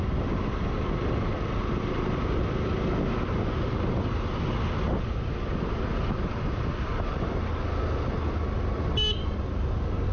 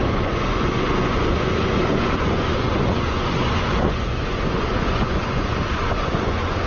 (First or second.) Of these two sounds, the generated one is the second